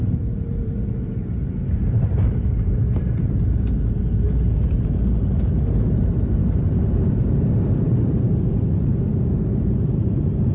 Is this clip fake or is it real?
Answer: fake